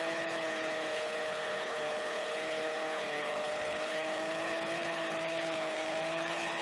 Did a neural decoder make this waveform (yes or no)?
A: yes